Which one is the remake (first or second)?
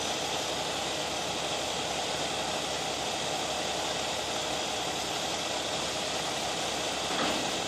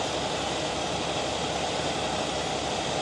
second